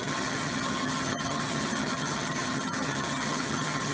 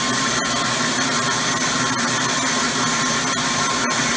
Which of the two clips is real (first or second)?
second